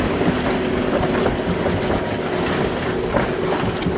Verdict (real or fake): real